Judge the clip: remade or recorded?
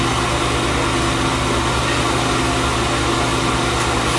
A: recorded